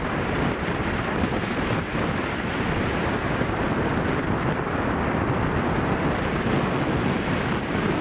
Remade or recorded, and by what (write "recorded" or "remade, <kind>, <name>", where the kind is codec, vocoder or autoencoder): recorded